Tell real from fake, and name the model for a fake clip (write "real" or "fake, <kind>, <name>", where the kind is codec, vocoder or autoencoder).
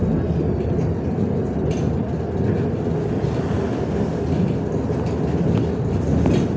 real